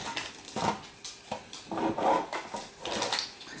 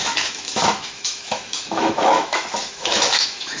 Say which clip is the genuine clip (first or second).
first